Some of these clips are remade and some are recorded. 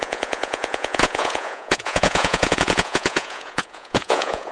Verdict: remade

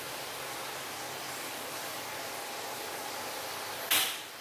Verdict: recorded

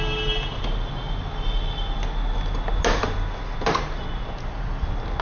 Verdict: recorded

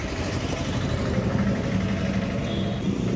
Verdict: recorded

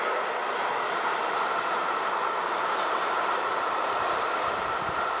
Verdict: recorded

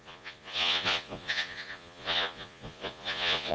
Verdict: remade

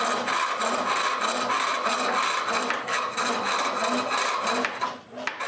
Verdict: recorded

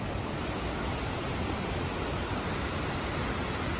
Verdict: recorded